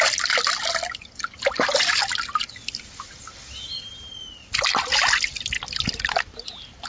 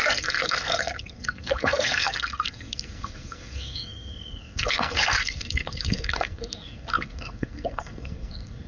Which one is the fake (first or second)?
second